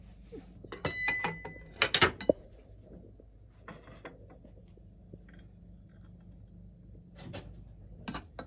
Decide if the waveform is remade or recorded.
recorded